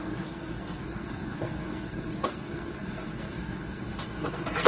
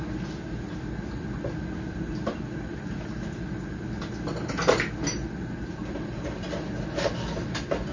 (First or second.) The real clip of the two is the second